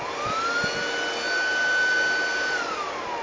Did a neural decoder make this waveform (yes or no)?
no